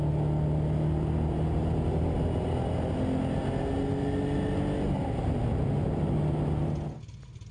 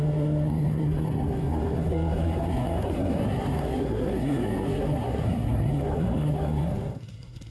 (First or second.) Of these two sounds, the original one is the first